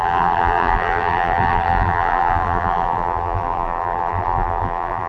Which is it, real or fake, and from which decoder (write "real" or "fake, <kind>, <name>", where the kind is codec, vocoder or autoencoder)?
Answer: fake, vocoder, BigVGAN v2